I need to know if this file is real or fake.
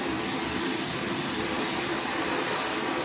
real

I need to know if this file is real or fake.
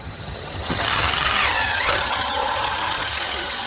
fake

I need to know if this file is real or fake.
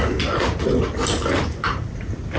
real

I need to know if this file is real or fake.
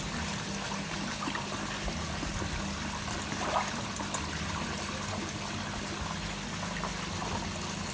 real